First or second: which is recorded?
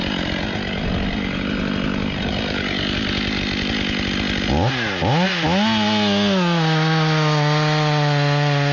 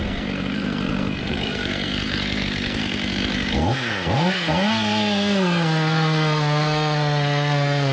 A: first